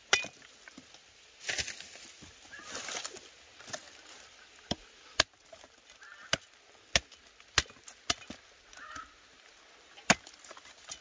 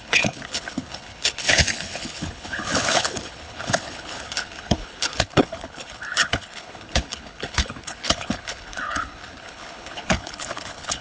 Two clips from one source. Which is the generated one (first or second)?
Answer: second